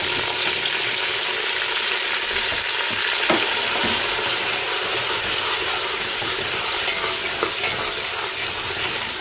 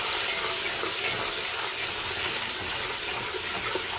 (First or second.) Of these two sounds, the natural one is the first